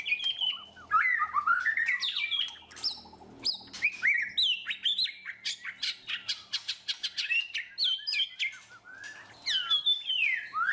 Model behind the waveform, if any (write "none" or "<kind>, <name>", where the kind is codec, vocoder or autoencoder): none